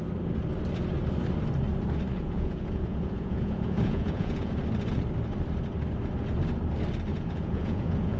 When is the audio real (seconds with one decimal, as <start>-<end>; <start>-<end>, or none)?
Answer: 0.0-2.1; 4.5-7.1